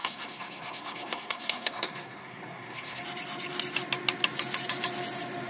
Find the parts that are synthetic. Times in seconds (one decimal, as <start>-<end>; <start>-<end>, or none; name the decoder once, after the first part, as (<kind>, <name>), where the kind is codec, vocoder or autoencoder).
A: 0.0-3.0 (codec, SNAC)